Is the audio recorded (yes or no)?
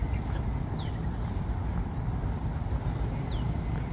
yes